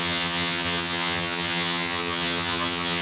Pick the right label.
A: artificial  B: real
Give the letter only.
A